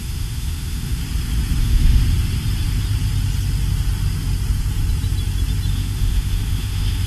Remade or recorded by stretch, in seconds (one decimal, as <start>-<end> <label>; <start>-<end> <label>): 0.0-1.0 remade; 1.0-1.6 recorded; 1.6-2.0 remade; 2.0-5.7 recorded; 5.7-7.1 remade